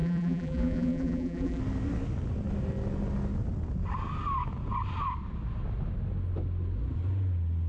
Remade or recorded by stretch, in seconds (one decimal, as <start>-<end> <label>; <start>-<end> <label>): 0.0-1.6 remade; 1.6-7.7 recorded